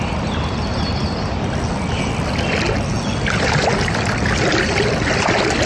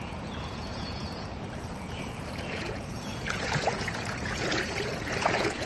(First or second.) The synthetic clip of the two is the second